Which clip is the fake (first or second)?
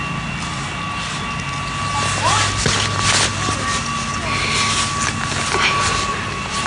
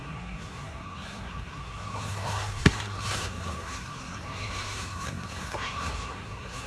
second